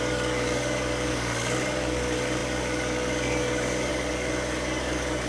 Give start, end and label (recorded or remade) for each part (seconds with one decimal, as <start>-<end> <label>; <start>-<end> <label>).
0.0-5.3 remade